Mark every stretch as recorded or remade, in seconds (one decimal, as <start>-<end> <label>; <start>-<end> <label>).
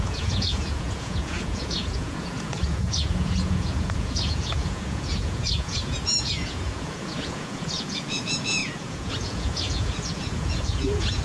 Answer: 0.0-11.2 remade